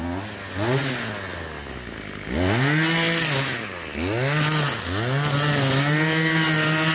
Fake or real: real